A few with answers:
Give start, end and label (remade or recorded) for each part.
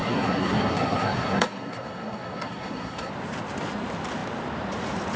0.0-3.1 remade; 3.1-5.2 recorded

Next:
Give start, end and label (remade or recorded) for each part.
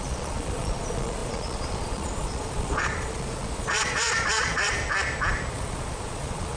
0.0-4.8 remade; 4.8-5.5 recorded; 5.5-6.6 remade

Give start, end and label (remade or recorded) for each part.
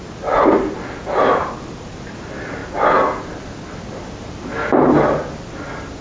0.0-6.0 recorded